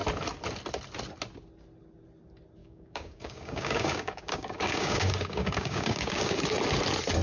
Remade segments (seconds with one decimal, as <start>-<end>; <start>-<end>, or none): 2.6-6.4